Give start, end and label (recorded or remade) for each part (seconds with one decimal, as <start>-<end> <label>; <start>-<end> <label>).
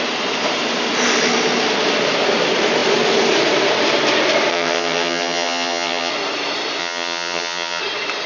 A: 0.0-4.5 recorded; 4.5-6.1 remade; 6.1-6.8 recorded; 6.8-7.8 remade; 7.8-8.3 recorded